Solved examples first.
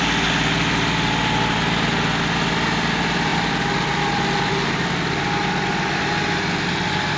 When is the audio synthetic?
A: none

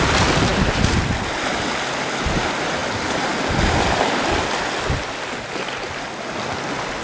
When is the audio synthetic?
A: none

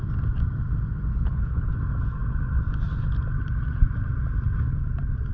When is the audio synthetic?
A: 1.1-1.7 (codec, HILCodec)